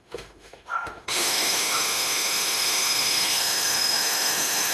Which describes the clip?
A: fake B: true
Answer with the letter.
A